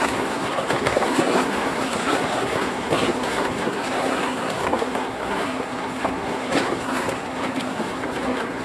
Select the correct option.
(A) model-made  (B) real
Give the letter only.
A